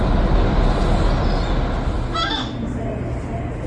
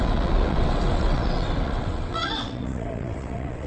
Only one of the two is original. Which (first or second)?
first